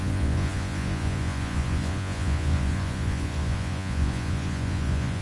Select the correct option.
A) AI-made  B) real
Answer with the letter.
A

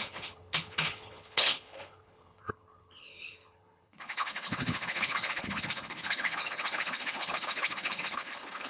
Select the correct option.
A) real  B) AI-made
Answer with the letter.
B